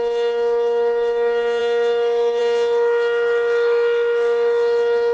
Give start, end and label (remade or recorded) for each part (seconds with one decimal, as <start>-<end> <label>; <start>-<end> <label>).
0.0-5.1 remade